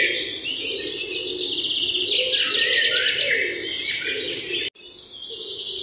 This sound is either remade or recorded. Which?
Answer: recorded